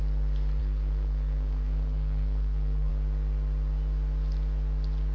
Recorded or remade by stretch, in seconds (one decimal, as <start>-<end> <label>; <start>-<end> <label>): 0.0-0.6 recorded; 0.6-2.9 remade; 2.9-5.1 recorded